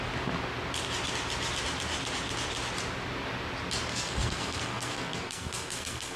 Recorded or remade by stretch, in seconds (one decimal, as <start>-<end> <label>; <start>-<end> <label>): 0.0-3.9 recorded; 3.9-6.2 remade